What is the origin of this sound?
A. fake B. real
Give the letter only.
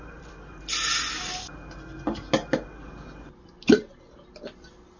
B